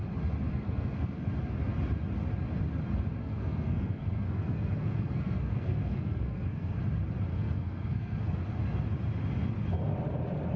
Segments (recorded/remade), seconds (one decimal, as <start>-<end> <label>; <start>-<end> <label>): 0.0-0.5 recorded; 0.5-1.3 remade; 1.3-3.2 recorded; 3.2-6.8 remade; 6.8-7.3 recorded; 7.3-8.4 remade; 8.4-10.6 recorded